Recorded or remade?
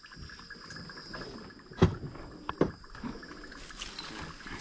recorded